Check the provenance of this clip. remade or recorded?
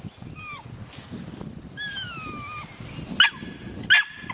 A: recorded